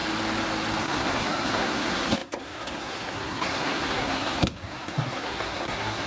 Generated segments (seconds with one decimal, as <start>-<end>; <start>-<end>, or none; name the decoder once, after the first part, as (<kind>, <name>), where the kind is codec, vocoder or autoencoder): 0.8-6.1 (codec, SNAC)